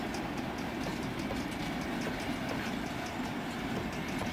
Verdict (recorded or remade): recorded